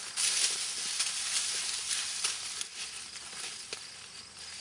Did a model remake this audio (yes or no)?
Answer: no